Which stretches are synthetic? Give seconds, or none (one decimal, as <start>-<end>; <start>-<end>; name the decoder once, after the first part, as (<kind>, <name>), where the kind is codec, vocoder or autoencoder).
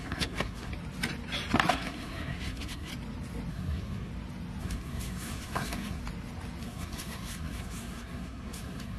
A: 0.0-0.7 (codec, SNAC); 1.7-2.9; 3.5-4.1; 4.6-6.0; 6.6-9.0